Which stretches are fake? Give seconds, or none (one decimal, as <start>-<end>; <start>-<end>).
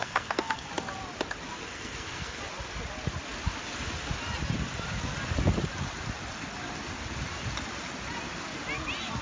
0.0-0.7; 1.6-2.4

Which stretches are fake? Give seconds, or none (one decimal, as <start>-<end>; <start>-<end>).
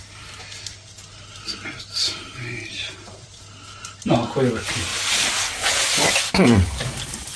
2.0-3.4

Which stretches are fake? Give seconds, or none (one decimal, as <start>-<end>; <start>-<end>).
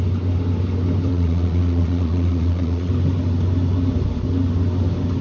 1.1-2.9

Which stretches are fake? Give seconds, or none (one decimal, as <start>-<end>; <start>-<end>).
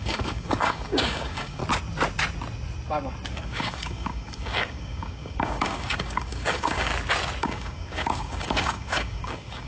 0.0-1.6; 3.3-6.9; 7.4-9.7